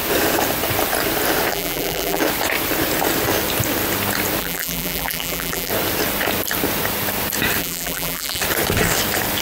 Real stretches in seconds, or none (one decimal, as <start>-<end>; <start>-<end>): 0.0-1.5; 2.2-4.4; 5.7-7.6; 8.4-9.4